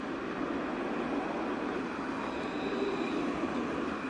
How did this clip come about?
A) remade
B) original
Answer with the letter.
B